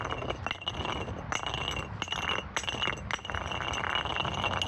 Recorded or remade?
recorded